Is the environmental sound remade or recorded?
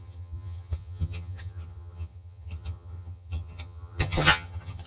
remade